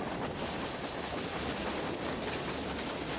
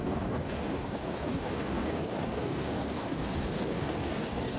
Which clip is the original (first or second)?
first